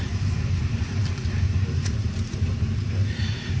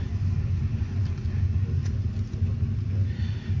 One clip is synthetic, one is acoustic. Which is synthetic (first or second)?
first